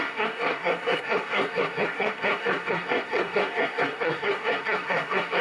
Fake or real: fake